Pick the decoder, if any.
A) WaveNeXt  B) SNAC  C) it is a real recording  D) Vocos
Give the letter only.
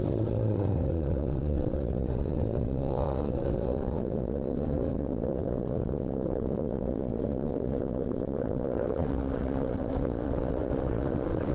A